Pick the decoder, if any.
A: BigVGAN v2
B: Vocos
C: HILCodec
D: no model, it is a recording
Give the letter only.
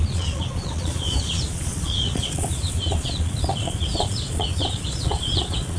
B